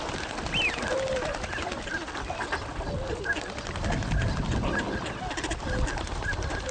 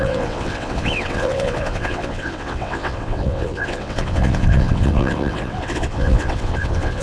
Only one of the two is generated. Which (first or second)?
second